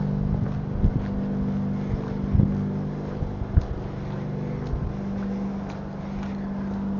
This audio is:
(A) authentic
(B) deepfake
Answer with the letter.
A